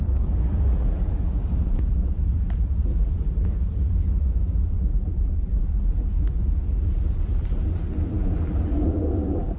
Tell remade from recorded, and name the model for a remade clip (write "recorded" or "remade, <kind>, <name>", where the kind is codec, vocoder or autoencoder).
remade, vocoder, BigVGAN v2